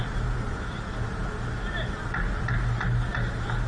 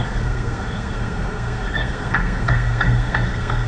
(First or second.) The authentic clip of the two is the first